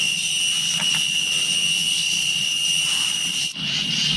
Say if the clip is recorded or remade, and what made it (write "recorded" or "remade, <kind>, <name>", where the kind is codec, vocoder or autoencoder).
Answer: recorded